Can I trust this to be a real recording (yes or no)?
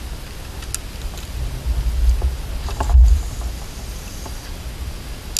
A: yes